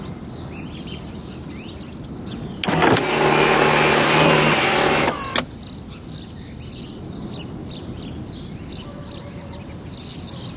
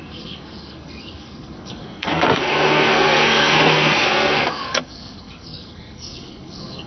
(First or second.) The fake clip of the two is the second